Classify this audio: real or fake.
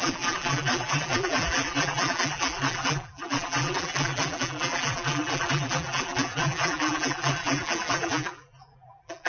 fake